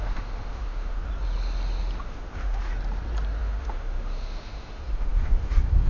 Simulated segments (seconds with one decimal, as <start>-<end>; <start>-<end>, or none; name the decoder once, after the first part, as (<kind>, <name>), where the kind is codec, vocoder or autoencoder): 0.0-1.0 (autoencoder, DAC-VAE); 2.0-2.7; 3.4-5.9